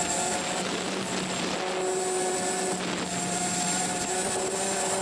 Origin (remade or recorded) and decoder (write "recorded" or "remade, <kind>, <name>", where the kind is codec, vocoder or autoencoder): recorded